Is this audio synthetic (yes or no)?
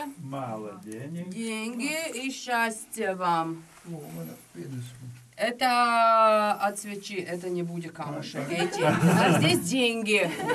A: no